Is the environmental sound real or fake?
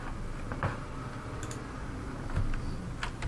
real